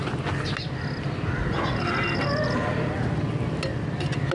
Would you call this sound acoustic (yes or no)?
yes